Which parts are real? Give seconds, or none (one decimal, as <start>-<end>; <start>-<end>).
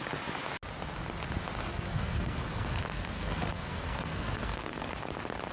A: 0.0-1.7; 4.9-5.5